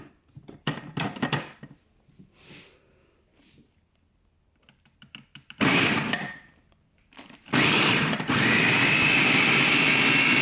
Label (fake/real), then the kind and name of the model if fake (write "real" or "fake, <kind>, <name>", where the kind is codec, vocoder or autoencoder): fake, vocoder, BigVGAN v2